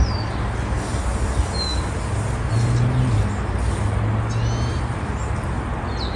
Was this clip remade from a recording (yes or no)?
no